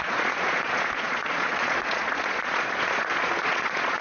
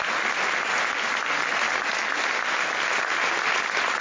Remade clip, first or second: first